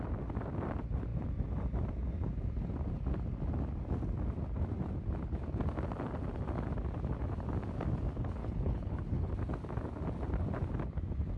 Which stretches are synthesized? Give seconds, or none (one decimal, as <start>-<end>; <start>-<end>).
8.4-9.3